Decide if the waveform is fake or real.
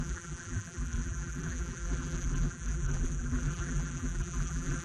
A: fake